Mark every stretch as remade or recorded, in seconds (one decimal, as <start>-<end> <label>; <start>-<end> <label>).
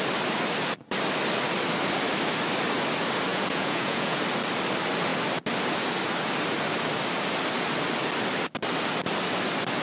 0.0-3.3 recorded; 3.3-4.2 remade; 4.2-9.8 recorded